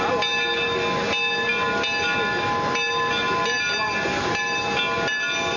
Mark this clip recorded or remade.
recorded